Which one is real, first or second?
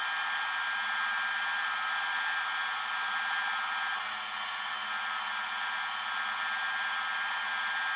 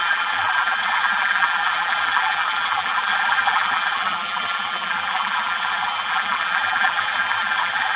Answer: first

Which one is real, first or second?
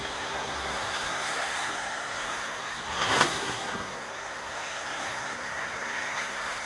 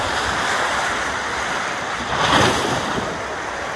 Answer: second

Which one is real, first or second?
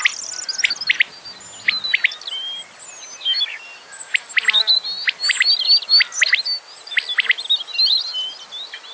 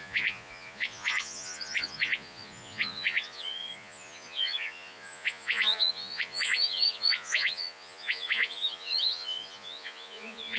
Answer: first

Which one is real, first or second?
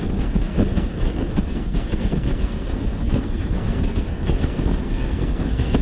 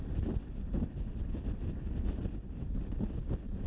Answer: second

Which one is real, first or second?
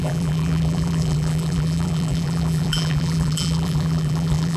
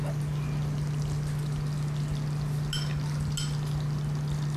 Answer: second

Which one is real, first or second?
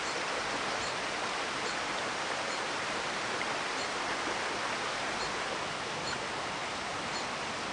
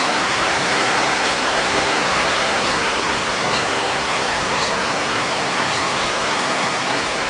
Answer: first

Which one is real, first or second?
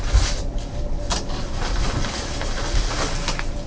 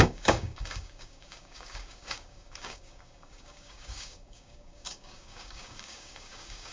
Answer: first